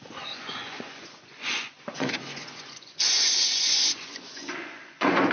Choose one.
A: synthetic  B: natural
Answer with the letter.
A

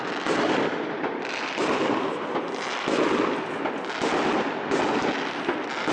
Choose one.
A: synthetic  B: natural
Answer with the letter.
B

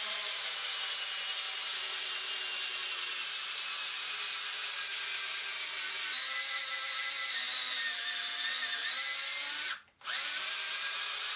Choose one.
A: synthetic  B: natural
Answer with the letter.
B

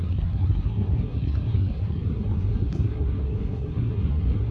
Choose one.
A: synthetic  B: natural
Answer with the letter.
A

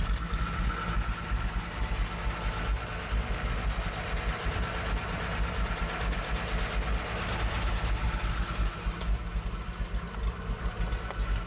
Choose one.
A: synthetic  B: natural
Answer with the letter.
B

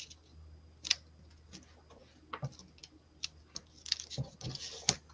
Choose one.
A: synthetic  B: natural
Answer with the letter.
B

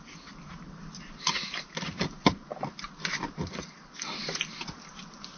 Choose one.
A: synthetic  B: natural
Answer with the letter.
B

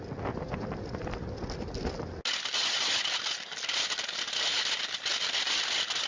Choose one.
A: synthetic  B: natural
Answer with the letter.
B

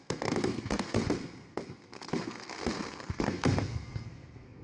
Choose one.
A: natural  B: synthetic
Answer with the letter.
B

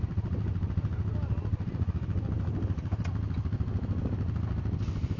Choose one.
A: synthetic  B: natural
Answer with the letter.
B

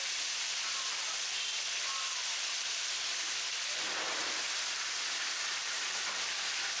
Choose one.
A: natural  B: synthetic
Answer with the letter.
A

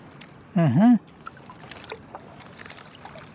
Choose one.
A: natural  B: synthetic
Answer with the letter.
A